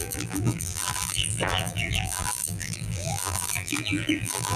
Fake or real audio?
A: fake